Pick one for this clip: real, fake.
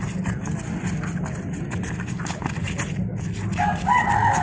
real